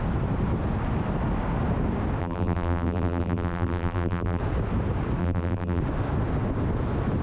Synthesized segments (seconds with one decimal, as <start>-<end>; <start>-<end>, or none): 2.2-4.4; 5.2-5.8